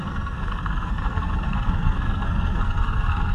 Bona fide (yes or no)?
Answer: no